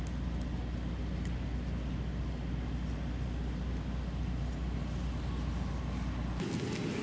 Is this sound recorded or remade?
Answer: recorded